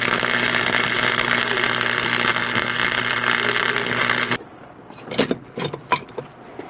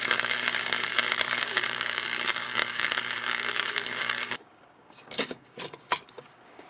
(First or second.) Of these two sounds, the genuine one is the first